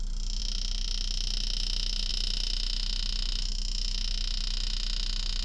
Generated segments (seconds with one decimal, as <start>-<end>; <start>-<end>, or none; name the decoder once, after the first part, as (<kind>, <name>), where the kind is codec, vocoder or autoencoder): none